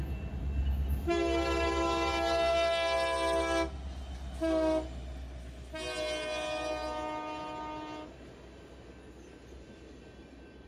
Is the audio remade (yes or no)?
no